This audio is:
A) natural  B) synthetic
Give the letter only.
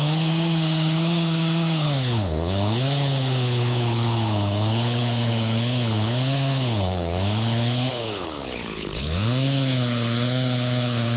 B